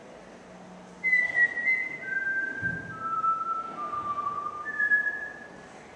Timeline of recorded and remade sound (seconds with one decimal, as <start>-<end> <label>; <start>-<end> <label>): 0.0-6.0 recorded